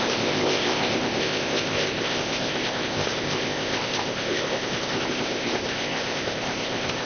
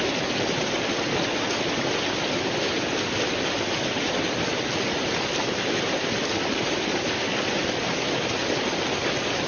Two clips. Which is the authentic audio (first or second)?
second